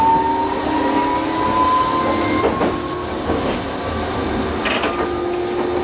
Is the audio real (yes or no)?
yes